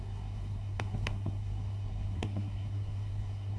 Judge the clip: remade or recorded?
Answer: remade